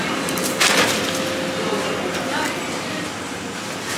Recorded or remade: recorded